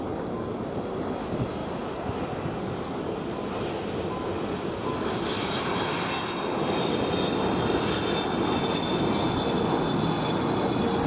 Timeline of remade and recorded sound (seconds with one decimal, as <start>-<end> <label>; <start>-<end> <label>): 0.0-11.1 recorded